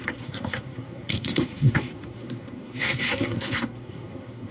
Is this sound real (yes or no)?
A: no